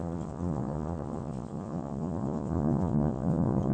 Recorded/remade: remade